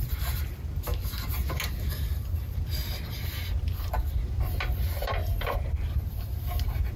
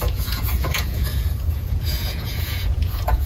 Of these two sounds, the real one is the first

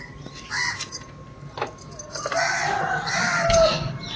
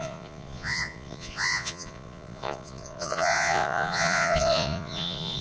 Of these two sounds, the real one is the first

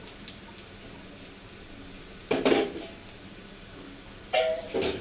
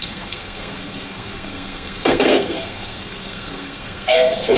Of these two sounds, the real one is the first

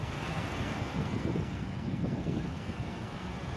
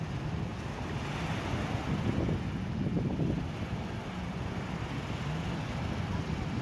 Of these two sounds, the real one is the second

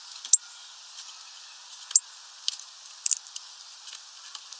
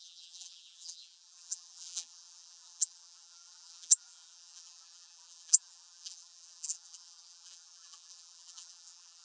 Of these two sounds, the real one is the first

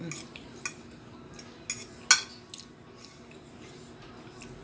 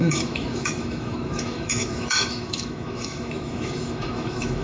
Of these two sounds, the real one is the first